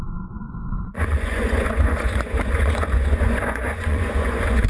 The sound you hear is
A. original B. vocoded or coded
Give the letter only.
B